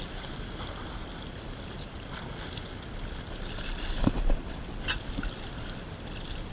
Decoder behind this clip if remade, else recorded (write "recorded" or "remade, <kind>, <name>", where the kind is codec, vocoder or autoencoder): recorded